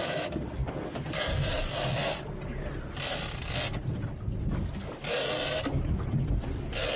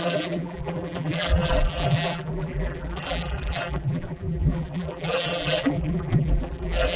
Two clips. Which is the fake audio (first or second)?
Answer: second